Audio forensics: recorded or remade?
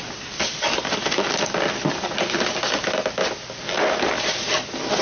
recorded